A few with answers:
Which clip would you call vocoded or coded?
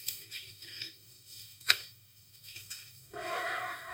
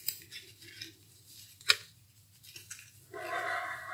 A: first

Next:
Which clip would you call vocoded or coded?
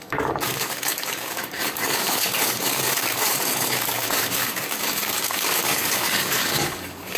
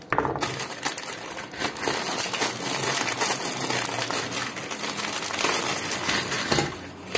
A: first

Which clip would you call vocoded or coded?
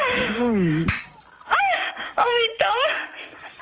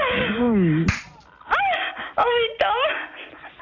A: first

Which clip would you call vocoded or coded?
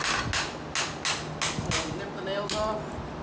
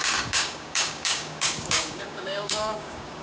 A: second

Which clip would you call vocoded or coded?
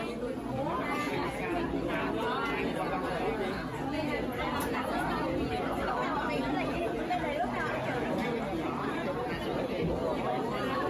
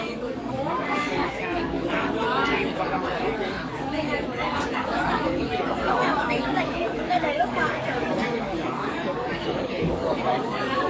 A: second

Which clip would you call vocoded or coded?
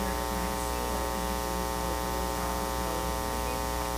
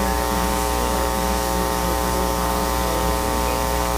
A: second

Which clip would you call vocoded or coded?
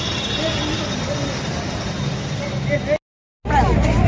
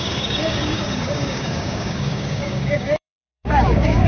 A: second